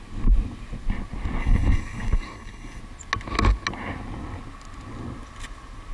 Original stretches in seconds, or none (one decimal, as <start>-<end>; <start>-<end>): 0.0-1.4; 2.8-5.9

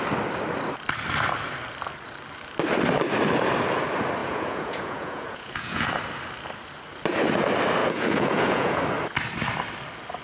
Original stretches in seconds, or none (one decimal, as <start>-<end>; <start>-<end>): 0.0-4.2; 5.9-7.8; 8.8-10.2

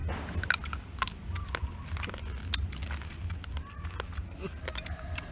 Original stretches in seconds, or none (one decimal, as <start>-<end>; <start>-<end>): 0.0-5.3

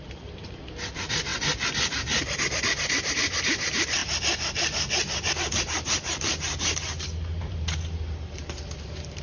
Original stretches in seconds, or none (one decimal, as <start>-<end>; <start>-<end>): 1.3-2.4; 4.0-5.6

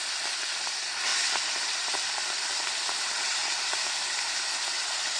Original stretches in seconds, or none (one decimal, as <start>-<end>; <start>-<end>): 0.0-5.2

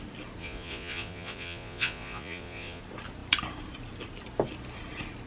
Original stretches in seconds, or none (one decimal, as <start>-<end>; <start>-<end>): 0.0-0.4; 2.8-5.3

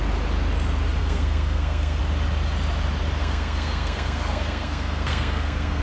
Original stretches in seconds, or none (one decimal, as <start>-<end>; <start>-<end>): 0.0-1.0; 2.0-3.2

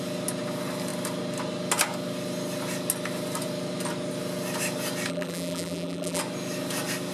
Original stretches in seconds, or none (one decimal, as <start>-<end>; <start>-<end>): 0.0-5.1; 6.2-7.1